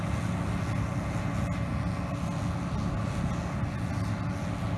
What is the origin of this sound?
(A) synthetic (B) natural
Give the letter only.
B